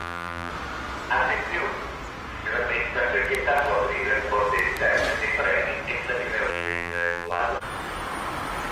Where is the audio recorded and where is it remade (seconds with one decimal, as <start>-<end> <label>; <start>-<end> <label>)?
0.0-0.5 remade; 0.5-6.5 recorded; 6.5-7.4 remade; 7.4-8.7 recorded